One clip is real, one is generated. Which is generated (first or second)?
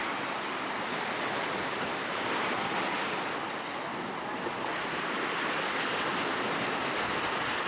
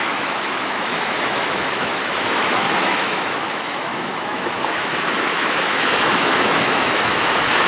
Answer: second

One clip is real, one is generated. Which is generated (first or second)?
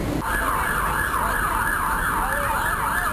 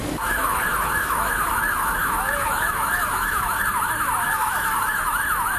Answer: second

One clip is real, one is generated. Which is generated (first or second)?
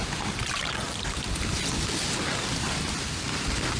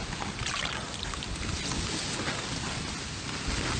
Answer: first